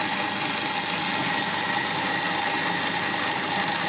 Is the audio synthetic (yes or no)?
no